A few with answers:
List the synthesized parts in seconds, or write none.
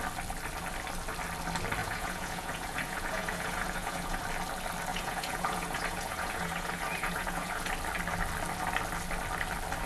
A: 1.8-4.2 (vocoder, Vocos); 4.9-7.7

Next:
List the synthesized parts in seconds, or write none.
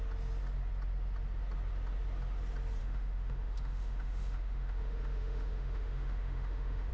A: 2.8-6.9 (autoencoder, DAC-VAE)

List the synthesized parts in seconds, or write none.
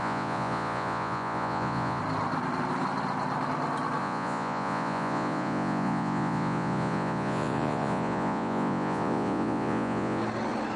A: 0.0-2.0 (vocoder, Vocos); 4.0-10.2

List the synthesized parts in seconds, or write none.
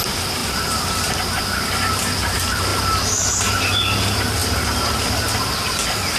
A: 0.4-1.3 (vocoder, BigVGAN v2); 2.7-4.0; 4.4-5.5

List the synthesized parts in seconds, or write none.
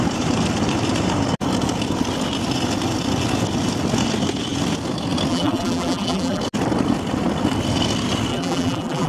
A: 5.3-6.4 (vocoder, BigVGAN v2); 8.3-9.1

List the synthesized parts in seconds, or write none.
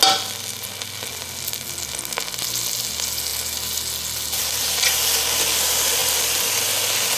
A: none